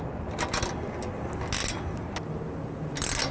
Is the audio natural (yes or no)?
yes